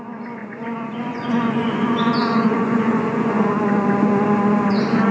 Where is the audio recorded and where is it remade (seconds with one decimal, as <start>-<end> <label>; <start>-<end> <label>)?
0.0-0.4 recorded; 0.4-3.5 remade; 3.5-5.1 recorded